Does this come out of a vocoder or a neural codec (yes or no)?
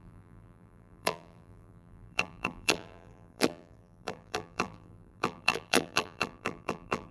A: yes